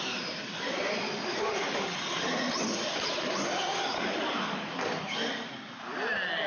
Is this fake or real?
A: real